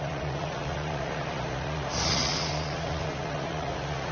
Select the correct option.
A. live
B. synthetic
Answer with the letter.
B